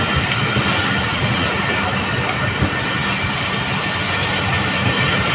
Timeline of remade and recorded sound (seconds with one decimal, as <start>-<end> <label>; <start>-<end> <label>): 0.0-1.1 recorded; 1.1-1.6 remade; 1.6-5.3 recorded